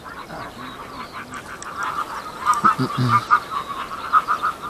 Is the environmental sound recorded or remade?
recorded